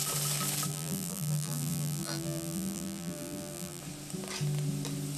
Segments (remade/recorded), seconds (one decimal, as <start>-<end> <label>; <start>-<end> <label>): 0.0-0.7 recorded; 0.7-3.8 remade; 3.8-5.2 recorded